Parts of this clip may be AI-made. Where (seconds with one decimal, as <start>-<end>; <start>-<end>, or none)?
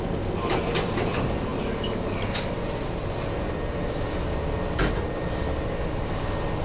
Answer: none